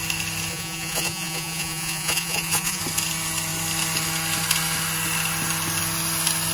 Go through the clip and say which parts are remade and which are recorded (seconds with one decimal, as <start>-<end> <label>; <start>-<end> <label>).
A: 0.0-0.5 recorded; 0.5-2.8 remade; 2.8-6.5 recorded